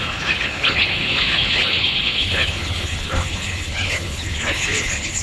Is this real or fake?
fake